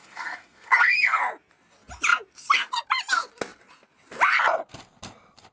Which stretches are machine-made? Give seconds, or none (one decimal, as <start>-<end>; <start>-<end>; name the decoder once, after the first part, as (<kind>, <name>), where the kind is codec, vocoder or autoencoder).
0.0-1.2 (codec, SNAC)